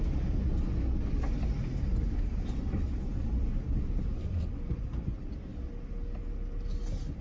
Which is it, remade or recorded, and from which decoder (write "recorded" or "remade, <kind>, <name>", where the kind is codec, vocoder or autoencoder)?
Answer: recorded